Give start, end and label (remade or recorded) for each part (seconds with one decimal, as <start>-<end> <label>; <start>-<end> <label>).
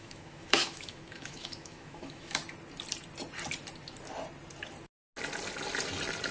0.0-2.4 remade; 2.4-6.3 recorded